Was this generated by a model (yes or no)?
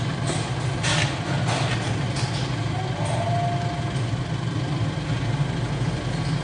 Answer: no